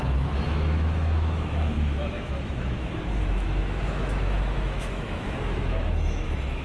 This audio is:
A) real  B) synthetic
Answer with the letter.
B